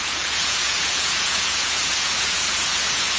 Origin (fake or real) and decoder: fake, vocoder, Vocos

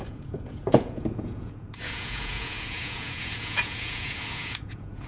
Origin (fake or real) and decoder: fake, vocoder, Vocos